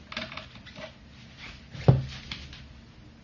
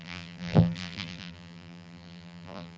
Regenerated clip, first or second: second